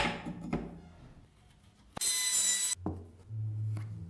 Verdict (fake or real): real